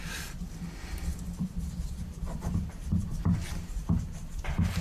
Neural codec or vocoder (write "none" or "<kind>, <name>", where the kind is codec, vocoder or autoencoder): none